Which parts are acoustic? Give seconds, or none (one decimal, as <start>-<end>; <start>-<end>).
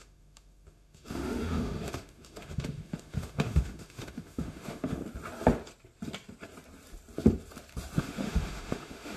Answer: 5.0-8.0